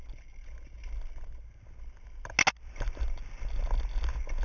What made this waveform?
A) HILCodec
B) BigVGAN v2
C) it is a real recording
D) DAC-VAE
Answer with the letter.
C